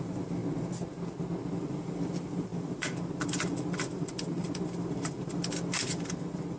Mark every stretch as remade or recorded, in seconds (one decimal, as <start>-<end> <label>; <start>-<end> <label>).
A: 0.0-0.4 remade; 0.4-1.5 recorded; 1.5-6.6 remade